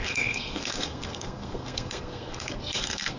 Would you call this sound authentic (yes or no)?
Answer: no